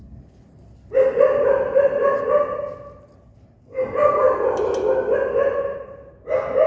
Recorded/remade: recorded